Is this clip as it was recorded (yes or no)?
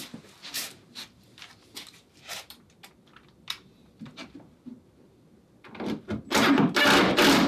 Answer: yes